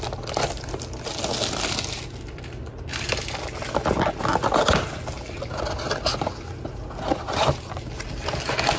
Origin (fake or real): real